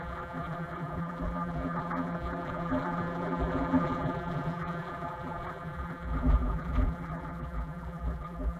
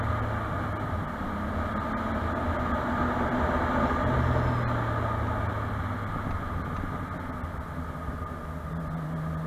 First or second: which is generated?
first